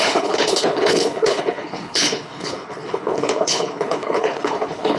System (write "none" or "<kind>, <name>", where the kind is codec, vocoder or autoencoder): codec, HILCodec